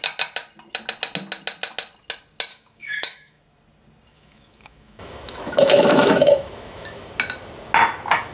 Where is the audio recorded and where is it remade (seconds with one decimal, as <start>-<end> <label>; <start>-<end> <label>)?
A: 0.0-2.5 recorded; 2.5-3.4 remade; 3.4-4.1 recorded; 4.1-7.1 remade; 7.1-8.3 recorded